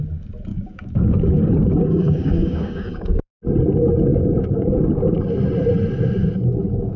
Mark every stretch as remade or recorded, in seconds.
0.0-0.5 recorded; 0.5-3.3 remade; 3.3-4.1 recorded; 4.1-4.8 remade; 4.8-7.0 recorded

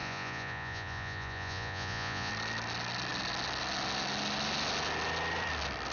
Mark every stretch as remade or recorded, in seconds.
0.0-2.3 remade; 2.3-5.9 recorded

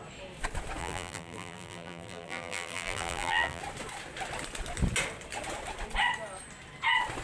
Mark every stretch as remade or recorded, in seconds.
0.0-0.8 recorded; 0.8-3.6 remade; 3.6-7.2 recorded